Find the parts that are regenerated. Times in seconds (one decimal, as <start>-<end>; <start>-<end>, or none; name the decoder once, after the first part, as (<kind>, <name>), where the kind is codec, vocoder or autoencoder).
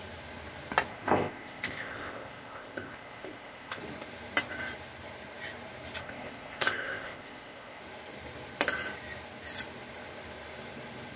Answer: 0.9-3.8 (codec, ZipCodec); 6.0-7.8